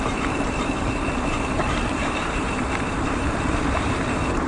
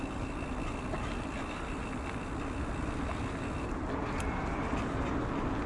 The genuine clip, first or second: second